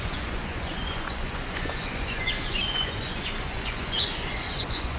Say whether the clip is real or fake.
fake